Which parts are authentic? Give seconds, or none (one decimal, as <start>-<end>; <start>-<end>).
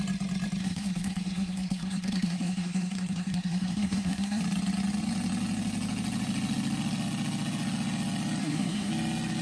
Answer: 0.0-0.6; 4.4-8.4; 8.9-9.4